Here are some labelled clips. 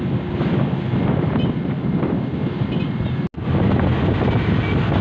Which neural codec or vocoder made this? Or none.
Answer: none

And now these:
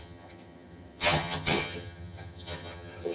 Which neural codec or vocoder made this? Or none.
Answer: vocoder, HiFi-GAN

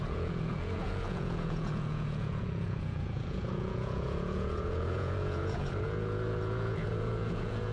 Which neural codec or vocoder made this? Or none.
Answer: vocoder, Vocos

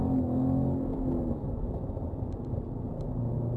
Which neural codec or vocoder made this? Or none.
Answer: none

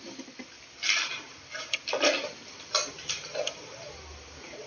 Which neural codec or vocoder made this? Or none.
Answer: none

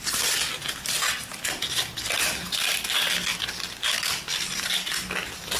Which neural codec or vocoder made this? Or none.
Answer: none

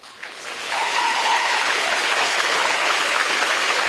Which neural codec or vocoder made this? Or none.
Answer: codec, HILCodec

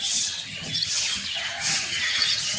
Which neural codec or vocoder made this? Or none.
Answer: vocoder, HiFi-GAN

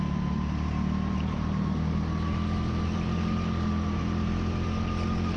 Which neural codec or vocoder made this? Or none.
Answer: none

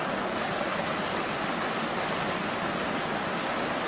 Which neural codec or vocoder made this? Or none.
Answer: none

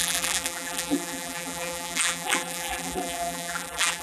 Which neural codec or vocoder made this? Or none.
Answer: vocoder, BigVGAN v2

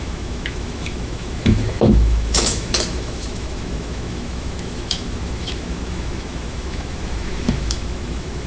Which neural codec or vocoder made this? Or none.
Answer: autoencoder, DAC-VAE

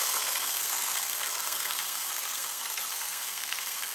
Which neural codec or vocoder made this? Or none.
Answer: codec, SNAC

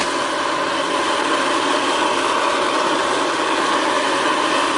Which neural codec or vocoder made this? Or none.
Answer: none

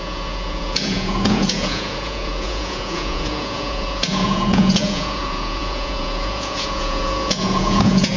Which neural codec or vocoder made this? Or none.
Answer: vocoder, Vocos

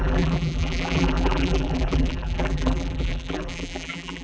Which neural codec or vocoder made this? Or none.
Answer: vocoder, BigVGAN v2